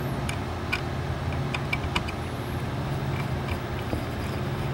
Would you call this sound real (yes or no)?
yes